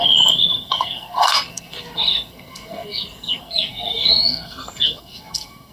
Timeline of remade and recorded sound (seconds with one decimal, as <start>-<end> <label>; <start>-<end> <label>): 0.0-5.7 remade